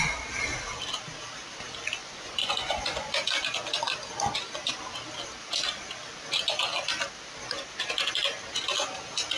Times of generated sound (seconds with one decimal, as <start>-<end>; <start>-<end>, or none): 2.0-3.1